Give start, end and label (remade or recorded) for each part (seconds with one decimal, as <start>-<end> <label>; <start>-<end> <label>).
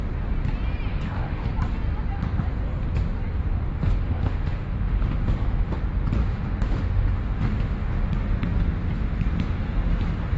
0.0-0.9 recorded; 0.9-1.5 remade; 1.5-3.7 recorded; 3.7-5.8 remade; 5.8-6.2 recorded; 6.2-8.1 remade; 8.1-10.4 recorded